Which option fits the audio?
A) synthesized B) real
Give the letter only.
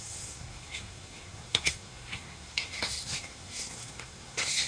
A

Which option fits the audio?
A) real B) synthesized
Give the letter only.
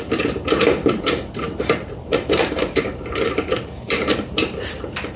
B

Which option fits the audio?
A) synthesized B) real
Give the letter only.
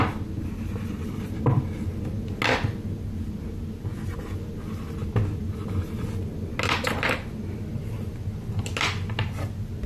B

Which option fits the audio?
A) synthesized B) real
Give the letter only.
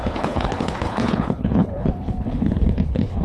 A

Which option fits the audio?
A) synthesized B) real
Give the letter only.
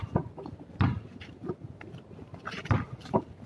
B